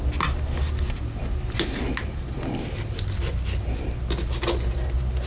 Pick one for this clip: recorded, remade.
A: recorded